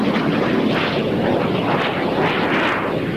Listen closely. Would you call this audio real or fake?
real